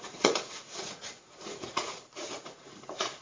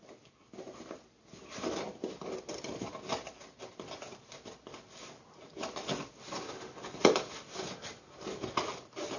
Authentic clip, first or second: second